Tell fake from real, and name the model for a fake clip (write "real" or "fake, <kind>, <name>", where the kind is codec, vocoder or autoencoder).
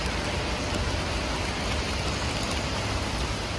real